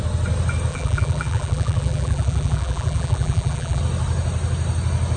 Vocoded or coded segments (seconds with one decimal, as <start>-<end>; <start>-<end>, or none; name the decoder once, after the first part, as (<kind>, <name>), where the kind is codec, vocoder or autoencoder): 0.7-3.8 (vocoder, BigVGAN v2)